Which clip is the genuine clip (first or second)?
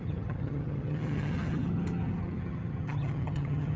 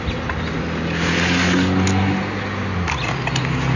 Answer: second